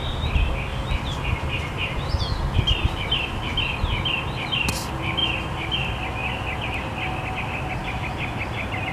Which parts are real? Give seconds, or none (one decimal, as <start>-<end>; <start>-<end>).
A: 0.0-0.7; 2.2-8.9